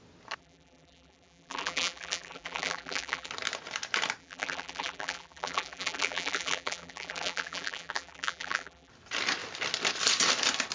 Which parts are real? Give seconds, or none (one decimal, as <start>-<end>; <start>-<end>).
0.0-0.4; 3.3-4.2; 8.9-10.7